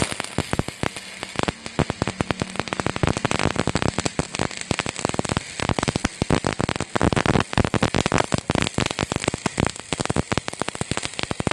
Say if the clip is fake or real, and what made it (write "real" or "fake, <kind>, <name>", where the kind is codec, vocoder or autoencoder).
real